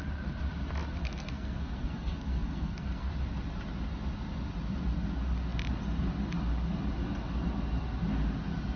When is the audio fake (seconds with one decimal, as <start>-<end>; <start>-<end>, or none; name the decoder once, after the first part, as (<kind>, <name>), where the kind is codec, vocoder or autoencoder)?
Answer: 1.0-3.1 (codec, SNAC)